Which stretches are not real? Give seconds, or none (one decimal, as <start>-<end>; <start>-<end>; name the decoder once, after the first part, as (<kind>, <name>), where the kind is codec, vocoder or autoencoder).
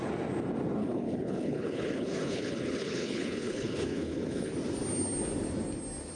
0.8-4.5 (codec, HILCodec)